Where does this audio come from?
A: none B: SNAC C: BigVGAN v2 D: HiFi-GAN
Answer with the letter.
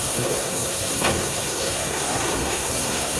B